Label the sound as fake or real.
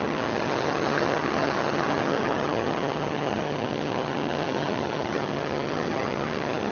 fake